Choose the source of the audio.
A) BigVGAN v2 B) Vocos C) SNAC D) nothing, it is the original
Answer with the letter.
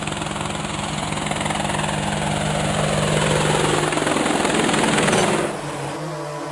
D